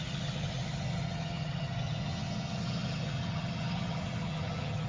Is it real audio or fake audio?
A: fake